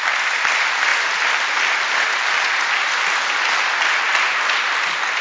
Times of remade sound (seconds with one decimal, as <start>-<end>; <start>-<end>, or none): none